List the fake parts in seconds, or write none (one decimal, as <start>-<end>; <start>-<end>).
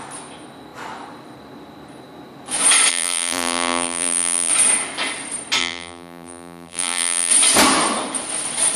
2.9-4.5; 5.6-7.3